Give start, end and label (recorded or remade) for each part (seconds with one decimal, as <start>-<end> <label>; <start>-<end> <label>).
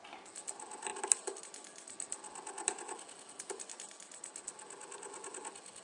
0.0-5.8 recorded